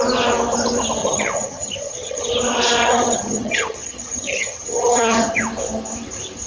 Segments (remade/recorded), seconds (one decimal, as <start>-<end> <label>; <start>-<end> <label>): 0.0-1.0 recorded; 1.0-2.3 remade; 2.3-2.8 recorded; 2.8-5.4 remade; 5.4-6.5 recorded

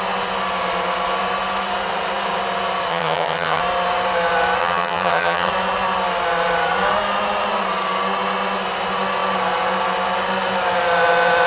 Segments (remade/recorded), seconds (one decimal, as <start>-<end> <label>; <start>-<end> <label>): 0.0-2.9 recorded; 2.9-3.6 remade; 3.6-4.6 recorded; 4.6-5.5 remade; 5.5-11.5 recorded

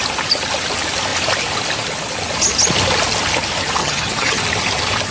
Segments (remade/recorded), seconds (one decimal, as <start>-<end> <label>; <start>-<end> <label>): 0.0-3.8 recorded; 3.8-4.4 remade; 4.4-5.1 recorded

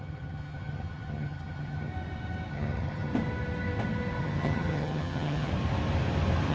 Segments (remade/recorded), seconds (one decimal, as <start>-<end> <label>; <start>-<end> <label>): 0.0-1.9 remade; 1.9-2.5 recorded; 2.5-3.1 remade; 3.1-4.2 recorded; 4.2-5.5 remade; 5.5-6.5 recorded

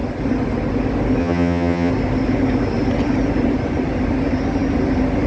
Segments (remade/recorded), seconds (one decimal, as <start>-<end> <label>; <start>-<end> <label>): 0.0-1.2 recorded; 1.2-1.9 remade; 1.9-5.3 recorded

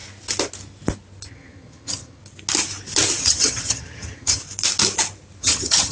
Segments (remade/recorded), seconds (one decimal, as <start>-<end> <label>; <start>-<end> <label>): 0.0-1.3 recorded; 1.3-2.2 remade; 2.2-3.2 recorded; 3.2-4.4 remade; 4.4-5.4 recorded; 5.4-5.9 remade

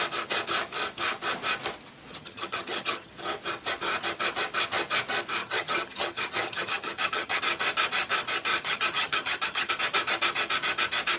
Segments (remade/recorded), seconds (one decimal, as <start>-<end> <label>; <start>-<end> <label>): 0.0-2.1 recorded; 2.1-3.1 remade; 3.1-5.4 recorded; 5.4-7.4 remade; 7.4-8.5 recorded; 8.5-9.7 remade; 9.7-11.2 recorded

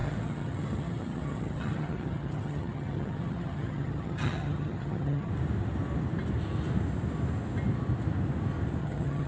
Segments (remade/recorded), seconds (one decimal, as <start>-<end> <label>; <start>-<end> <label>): 0.0-5.3 remade; 5.3-8.8 recorded; 8.8-9.3 remade